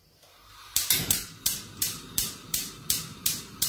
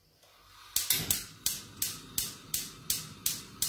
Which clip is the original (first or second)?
second